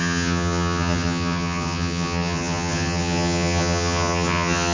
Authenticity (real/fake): fake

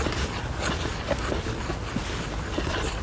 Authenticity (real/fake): real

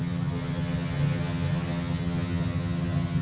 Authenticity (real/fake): fake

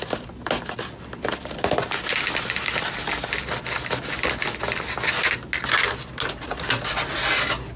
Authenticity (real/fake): real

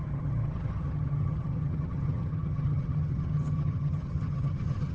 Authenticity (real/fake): fake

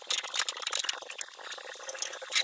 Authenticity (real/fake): real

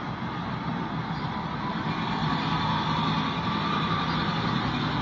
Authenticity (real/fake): real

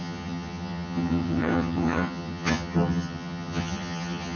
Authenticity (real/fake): fake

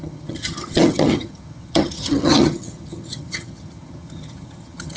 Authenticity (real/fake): fake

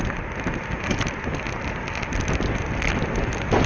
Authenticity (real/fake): real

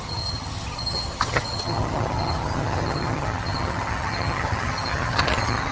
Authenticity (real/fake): fake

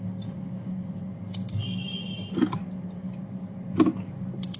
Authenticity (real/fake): real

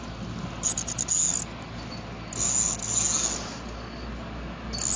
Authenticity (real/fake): real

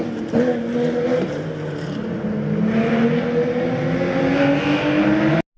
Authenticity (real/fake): real